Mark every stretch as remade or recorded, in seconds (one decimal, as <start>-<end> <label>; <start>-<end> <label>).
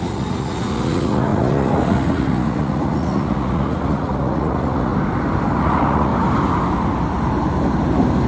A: 0.0-4.9 remade; 4.9-5.6 recorded; 5.6-6.1 remade; 6.1-8.3 recorded